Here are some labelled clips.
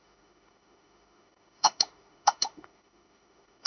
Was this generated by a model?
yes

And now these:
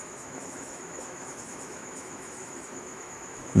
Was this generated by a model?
yes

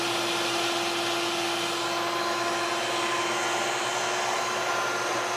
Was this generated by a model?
no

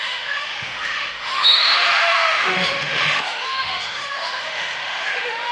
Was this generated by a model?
yes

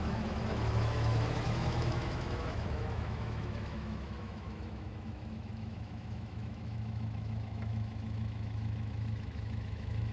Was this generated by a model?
yes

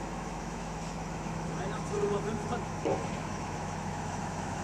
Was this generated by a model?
yes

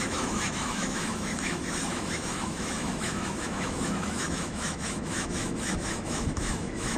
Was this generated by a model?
yes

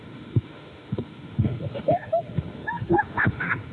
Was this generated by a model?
yes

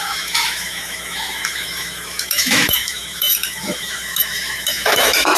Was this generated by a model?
yes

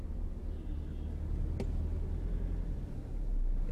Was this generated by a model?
no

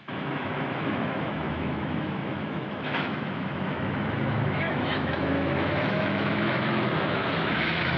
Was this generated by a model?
yes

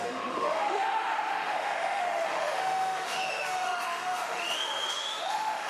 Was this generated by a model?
yes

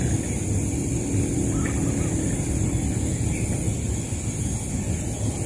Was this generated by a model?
no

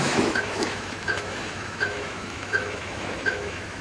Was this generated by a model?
yes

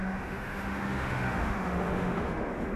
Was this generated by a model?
yes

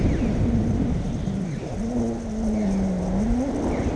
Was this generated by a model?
no